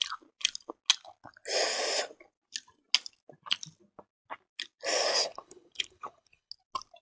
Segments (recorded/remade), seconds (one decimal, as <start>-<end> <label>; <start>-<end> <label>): 0.0-5.1 recorded; 5.1-6.5 remade; 6.5-7.0 recorded